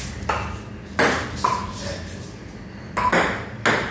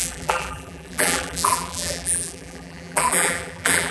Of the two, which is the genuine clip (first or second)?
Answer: first